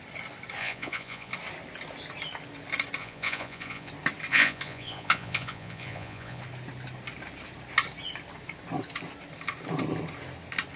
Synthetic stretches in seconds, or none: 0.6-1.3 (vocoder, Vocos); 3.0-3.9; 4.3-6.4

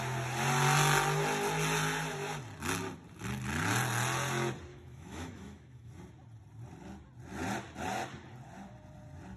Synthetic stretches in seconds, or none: 4.7-5.9 (autoencoder, DAC-VAE)

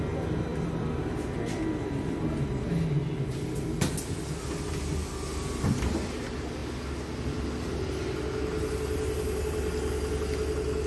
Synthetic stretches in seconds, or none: none

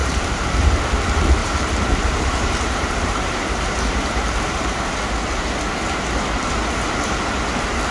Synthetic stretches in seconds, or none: 0.0-0.8 (vocoder, BigVGAN v2); 1.4-4.3